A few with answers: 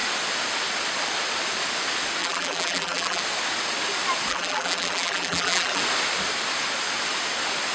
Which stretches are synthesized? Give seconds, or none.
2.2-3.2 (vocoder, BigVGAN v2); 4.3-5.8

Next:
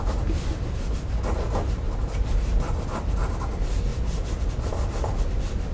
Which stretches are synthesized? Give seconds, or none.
3.9-4.5 (vocoder, BigVGAN v2)

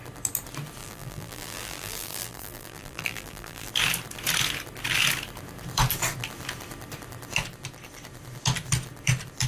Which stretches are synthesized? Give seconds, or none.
0.8-3.7 (vocoder, BigVGAN v2)

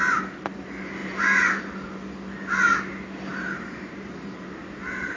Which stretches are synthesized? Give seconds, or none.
1.0-1.6 (vocoder, BigVGAN v2); 3.3-4.6